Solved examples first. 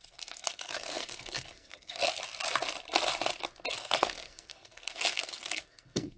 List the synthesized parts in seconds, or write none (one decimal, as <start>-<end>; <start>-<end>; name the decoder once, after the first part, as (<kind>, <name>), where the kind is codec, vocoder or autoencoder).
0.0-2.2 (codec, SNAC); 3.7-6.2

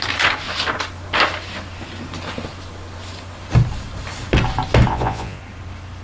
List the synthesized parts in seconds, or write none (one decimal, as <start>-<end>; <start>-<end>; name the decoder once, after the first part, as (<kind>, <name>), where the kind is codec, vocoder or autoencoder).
4.9-5.4 (vocoder, Vocos)

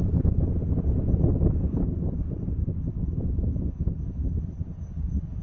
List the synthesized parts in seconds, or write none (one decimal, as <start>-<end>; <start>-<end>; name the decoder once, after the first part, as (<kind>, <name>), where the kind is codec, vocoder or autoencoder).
none

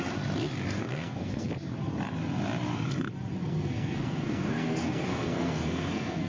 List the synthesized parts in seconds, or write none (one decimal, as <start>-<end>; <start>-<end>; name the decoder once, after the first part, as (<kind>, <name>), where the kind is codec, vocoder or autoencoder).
0.8-1.5 (codec, SNAC); 3.4-6.3